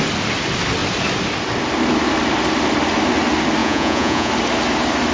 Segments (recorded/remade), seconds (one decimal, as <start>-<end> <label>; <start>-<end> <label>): 0.0-3.6 recorded; 3.6-4.3 remade; 4.3-5.1 recorded